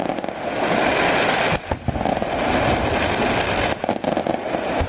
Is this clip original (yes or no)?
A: yes